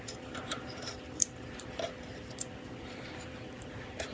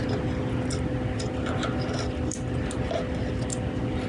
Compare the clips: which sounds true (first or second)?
second